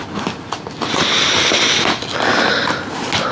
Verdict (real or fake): real